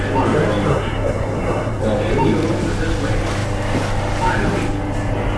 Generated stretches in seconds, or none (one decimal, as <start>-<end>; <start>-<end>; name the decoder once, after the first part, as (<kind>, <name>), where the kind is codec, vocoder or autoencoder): 0.7-1.8 (codec, SNAC)